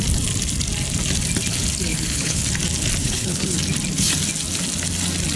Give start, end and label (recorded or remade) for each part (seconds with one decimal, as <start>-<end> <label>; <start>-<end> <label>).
0.0-1.9 recorded; 1.9-2.4 remade; 2.4-3.0 recorded; 3.0-3.6 remade; 3.6-5.4 recorded